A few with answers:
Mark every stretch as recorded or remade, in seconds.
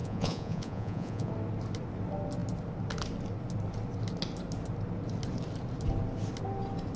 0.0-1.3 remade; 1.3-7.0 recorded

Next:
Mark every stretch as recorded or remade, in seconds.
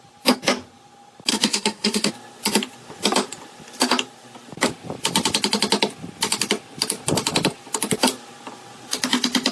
0.0-1.3 recorded; 1.3-2.1 remade; 2.1-9.5 recorded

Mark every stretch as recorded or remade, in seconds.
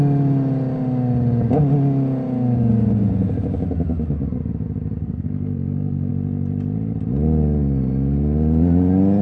0.0-5.0 recorded; 5.0-6.1 remade; 6.1-9.2 recorded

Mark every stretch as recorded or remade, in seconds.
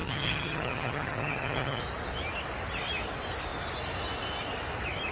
0.0-1.8 remade; 1.8-5.1 recorded